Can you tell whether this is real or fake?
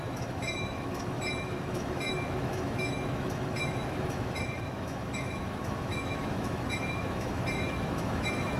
fake